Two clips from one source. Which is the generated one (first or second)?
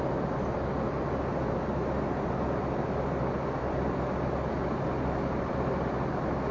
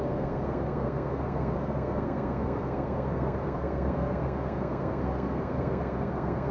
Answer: second